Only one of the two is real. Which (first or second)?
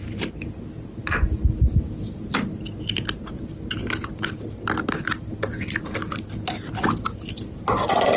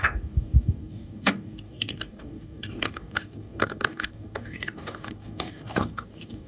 first